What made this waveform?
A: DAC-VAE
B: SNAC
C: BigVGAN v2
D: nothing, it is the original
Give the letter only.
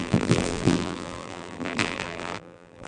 C